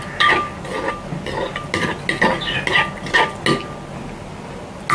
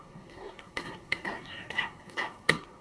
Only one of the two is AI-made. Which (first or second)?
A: second